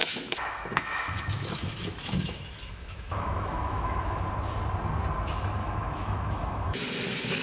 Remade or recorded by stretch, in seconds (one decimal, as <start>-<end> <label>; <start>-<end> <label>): 0.0-4.3 remade; 4.3-5.6 recorded; 5.6-6.8 remade; 6.8-7.4 recorded